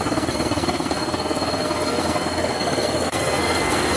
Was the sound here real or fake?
fake